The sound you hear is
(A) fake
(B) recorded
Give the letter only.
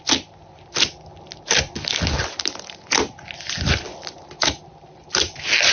B